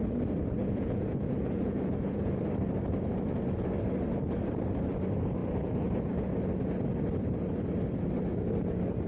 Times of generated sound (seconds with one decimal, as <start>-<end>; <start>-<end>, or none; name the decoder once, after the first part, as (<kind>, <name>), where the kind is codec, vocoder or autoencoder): 0.6-2.4 (vocoder, Vocos)